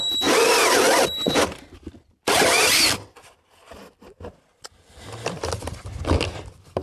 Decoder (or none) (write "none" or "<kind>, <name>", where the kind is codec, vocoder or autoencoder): none